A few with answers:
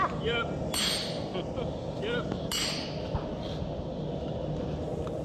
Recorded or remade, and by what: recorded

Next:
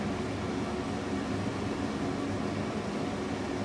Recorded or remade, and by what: recorded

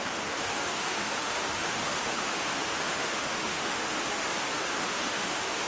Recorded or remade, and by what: remade, autoencoder, DAC-VAE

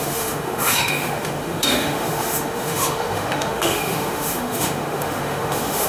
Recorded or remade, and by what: remade, autoencoder, DAC-VAE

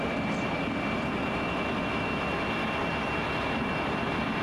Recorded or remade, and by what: recorded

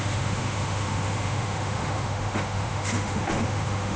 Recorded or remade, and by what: remade, autoencoder, DAC-VAE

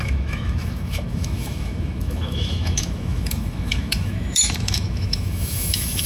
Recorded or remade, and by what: remade, autoencoder, DAC-VAE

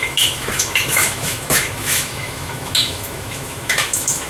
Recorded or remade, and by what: remade, autoencoder, DAC-VAE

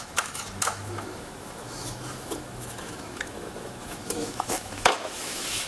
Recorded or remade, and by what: remade, autoencoder, DAC-VAE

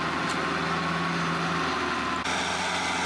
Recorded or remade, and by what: recorded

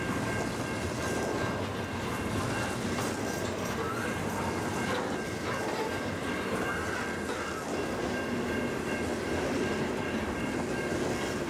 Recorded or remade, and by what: recorded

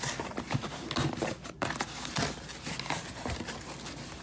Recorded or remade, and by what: recorded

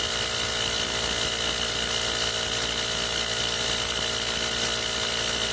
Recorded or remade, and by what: recorded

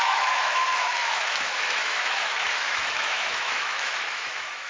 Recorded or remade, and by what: remade, autoencoder, DAC-VAE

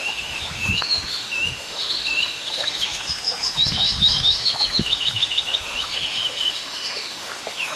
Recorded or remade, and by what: remade, autoencoder, DAC-VAE